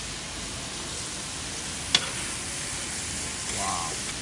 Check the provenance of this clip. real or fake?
real